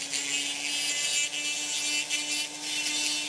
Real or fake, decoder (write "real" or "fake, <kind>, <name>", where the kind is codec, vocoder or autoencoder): real